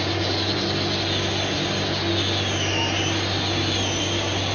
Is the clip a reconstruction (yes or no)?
no